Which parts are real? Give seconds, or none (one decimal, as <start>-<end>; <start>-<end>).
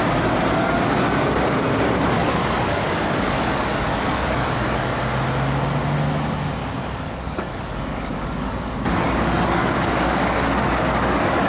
0.0-2.2; 5.0-6.6